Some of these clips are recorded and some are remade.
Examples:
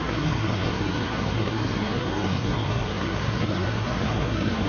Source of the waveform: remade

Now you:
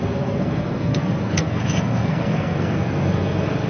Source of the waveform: remade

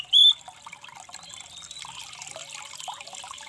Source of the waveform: recorded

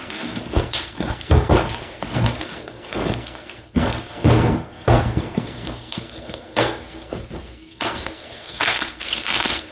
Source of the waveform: remade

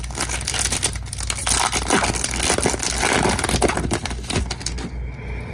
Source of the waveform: recorded